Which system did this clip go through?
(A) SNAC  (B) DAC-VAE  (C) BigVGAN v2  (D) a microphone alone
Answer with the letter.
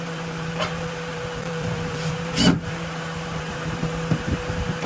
C